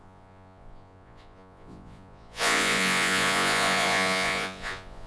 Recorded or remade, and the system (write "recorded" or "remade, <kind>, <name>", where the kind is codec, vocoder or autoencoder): remade, vocoder, Vocos